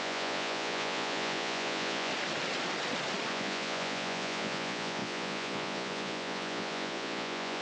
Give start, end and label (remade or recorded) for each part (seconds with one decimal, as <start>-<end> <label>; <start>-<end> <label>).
0.0-2.1 remade; 2.1-3.3 recorded; 3.3-7.6 remade